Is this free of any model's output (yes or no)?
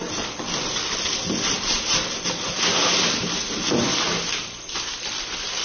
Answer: yes